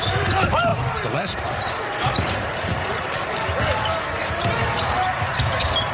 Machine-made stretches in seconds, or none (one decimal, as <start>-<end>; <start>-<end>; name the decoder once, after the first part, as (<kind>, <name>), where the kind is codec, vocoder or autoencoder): 0.7-3.3 (vocoder, BigVGAN v2); 4.2-5.1